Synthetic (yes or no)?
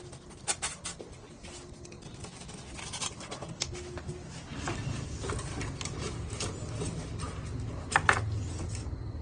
no